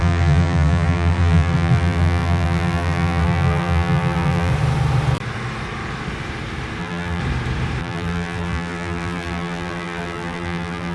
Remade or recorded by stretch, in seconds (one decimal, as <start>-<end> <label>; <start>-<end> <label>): 0.0-4.5 remade; 4.5-6.8 recorded; 6.8-7.2 remade; 7.2-7.8 recorded; 7.8-10.9 remade